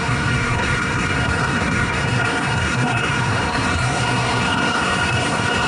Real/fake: fake